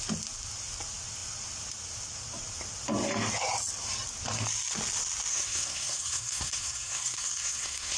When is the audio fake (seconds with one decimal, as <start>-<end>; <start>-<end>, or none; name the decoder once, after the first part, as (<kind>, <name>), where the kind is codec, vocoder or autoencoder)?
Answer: 5.3-8.0 (codec, SNAC)